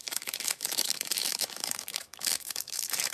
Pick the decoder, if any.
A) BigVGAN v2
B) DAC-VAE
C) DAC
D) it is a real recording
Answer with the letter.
B